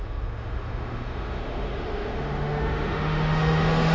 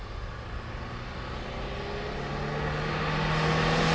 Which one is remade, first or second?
first